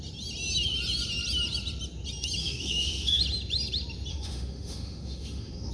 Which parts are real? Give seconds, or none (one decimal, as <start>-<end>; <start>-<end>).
0.0-2.4; 3.2-4.1